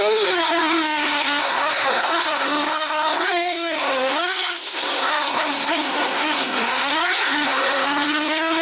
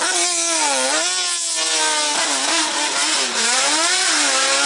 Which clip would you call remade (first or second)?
first